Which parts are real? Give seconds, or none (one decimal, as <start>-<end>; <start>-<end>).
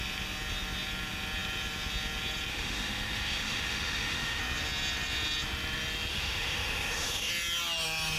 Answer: 0.0-2.5; 4.4-6.1; 7.3-8.2